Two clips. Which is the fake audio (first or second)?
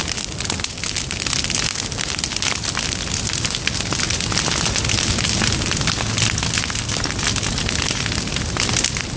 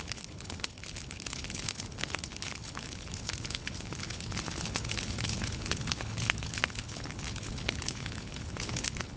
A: second